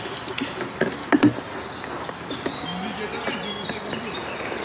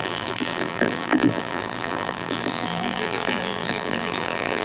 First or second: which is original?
first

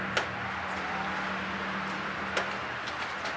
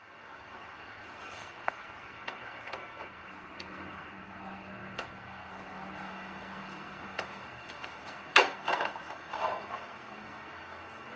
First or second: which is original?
first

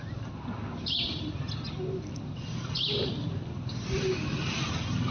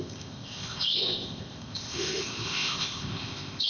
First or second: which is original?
first